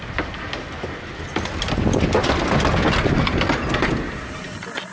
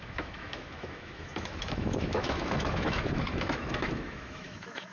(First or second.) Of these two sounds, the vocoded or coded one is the second